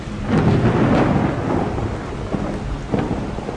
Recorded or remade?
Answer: recorded